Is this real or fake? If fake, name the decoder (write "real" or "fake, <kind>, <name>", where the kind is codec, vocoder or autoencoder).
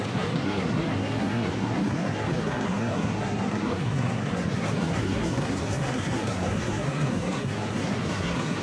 fake, codec, SNAC